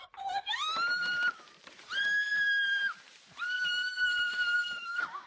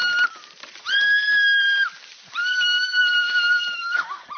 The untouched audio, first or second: second